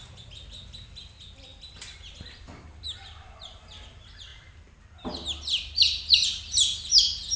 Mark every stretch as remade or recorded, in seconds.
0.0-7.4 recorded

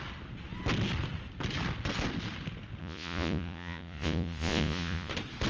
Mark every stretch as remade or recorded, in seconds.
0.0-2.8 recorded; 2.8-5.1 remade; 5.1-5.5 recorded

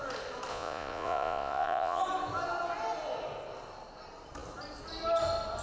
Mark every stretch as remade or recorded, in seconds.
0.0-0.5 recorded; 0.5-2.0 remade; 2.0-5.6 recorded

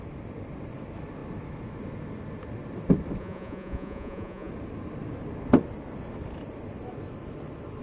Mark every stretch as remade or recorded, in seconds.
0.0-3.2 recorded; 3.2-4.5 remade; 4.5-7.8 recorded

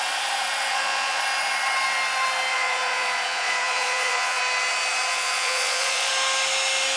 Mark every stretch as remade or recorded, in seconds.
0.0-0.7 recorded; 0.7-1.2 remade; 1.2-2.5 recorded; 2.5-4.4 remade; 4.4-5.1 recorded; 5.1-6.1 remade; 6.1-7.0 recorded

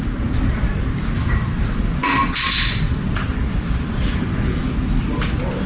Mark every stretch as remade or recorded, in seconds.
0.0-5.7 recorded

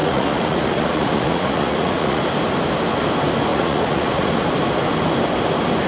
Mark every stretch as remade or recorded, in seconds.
0.0-2.2 remade; 2.2-3.5 recorded; 3.5-4.4 remade; 4.4-5.9 recorded